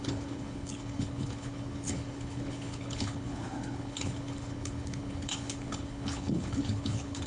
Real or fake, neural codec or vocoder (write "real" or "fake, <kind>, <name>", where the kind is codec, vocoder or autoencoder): fake, codec, HILCodec